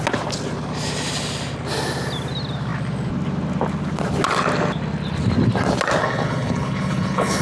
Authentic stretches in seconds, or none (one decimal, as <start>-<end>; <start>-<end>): 0.0-6.0